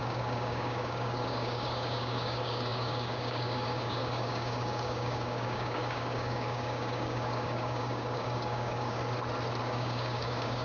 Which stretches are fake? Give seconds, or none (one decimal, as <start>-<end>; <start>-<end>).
0.0-9.0; 9.6-10.6